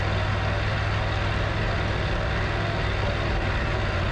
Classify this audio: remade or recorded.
recorded